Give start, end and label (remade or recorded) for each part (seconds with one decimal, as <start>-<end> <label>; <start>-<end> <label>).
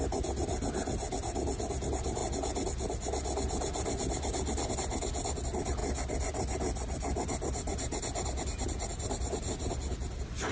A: 0.0-10.5 recorded